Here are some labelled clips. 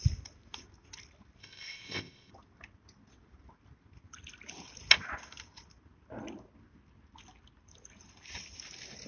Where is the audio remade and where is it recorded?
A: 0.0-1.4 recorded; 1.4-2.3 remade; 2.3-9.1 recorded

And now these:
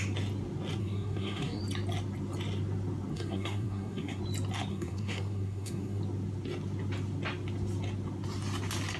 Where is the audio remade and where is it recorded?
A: 0.0-0.8 recorded; 0.8-1.6 remade; 1.6-3.1 recorded; 3.1-4.2 remade; 4.2-4.7 recorded; 4.7-6.0 remade; 6.0-9.0 recorded

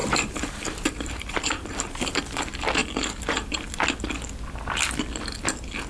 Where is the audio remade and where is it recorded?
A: 0.0-2.2 remade; 2.2-2.8 recorded; 2.8-3.7 remade; 3.7-5.9 recorded

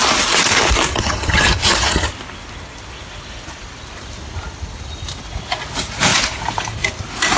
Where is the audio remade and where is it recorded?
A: 0.0-0.9 recorded; 0.9-2.1 remade; 2.1-7.4 recorded

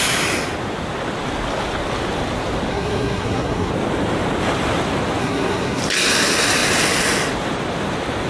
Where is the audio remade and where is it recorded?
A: 0.0-2.7 recorded; 2.7-3.7 remade; 3.7-5.2 recorded; 5.2-5.8 remade; 5.8-8.3 recorded

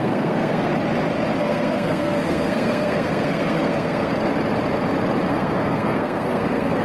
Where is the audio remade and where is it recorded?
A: 0.0-0.7 remade; 0.7-1.4 recorded; 1.4-4.1 remade; 4.1-5.3 recorded; 5.3-6.8 remade